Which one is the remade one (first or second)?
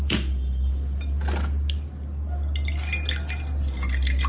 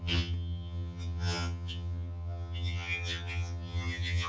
second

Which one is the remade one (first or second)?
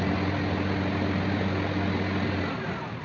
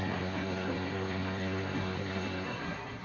second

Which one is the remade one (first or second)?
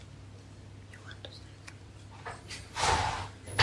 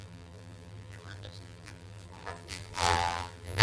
second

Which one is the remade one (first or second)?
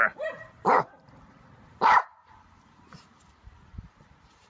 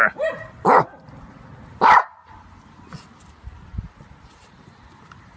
first